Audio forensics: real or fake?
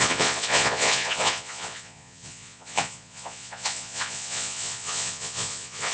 fake